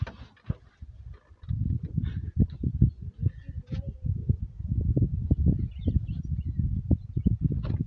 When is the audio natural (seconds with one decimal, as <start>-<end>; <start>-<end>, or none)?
0.0-4.2; 6.2-7.9